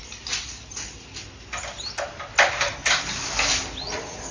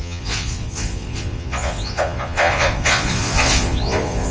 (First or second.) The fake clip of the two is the second